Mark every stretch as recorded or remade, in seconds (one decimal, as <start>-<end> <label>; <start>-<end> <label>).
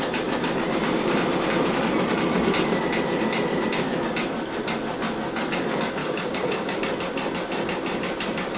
0.0-6.0 recorded; 6.0-6.8 remade; 6.8-8.6 recorded